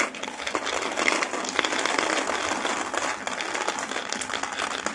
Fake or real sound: real